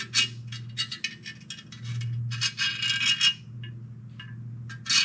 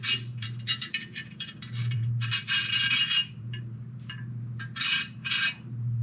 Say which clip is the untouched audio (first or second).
first